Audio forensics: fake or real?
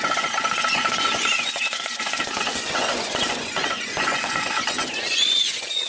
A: fake